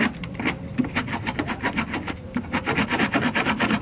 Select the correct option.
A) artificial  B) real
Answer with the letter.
A